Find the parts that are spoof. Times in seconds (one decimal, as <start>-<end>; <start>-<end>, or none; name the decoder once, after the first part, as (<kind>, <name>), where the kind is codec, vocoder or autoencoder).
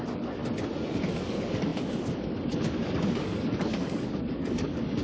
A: 0.0-0.4 (codec, DAC); 0.9-5.0